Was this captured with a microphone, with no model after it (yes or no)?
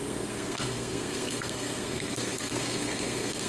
no